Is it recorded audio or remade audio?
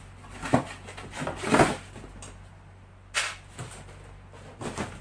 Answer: recorded